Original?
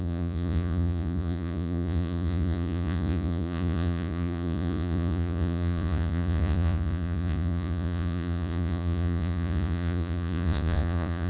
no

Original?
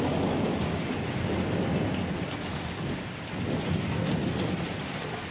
yes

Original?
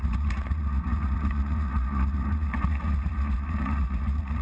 no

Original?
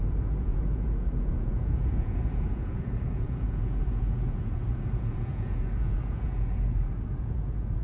no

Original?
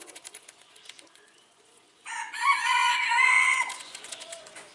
no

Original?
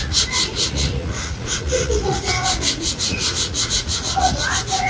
no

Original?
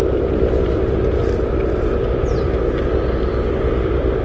yes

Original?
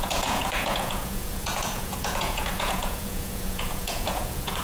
no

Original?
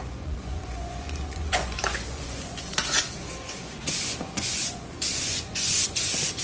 no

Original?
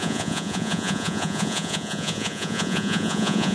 no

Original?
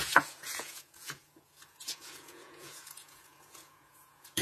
no